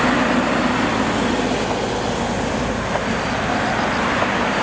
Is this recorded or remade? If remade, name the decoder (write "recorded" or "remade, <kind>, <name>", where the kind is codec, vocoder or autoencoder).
recorded